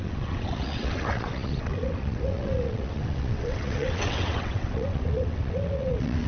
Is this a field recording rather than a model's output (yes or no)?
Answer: no